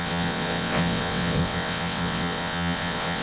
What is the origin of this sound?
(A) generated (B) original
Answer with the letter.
A